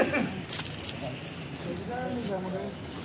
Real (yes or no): yes